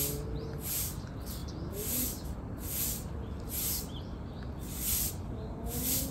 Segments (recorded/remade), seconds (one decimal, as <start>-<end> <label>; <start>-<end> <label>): 0.0-6.1 recorded